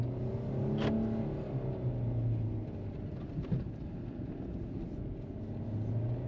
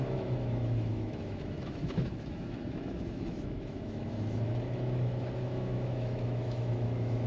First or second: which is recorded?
first